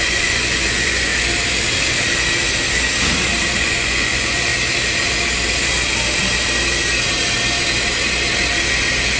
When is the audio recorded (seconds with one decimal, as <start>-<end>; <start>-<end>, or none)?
1.1-3.6; 4.5-9.2